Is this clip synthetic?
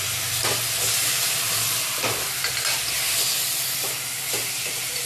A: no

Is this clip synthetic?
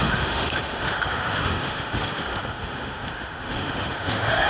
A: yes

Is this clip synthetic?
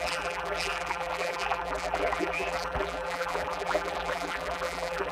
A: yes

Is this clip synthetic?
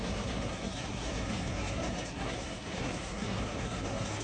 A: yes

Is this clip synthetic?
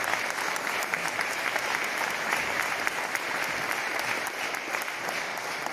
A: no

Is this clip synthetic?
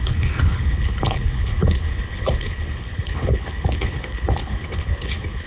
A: yes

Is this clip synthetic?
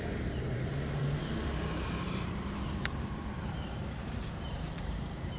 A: yes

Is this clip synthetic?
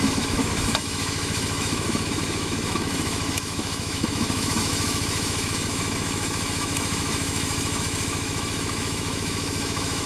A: yes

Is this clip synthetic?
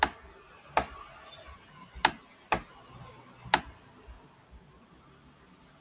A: no